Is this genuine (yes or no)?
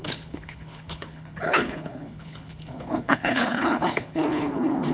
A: no